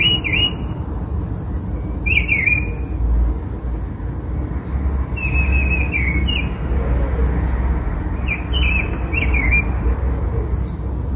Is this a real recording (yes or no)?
yes